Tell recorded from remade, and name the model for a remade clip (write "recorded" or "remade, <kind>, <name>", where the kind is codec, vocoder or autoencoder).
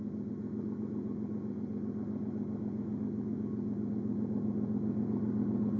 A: recorded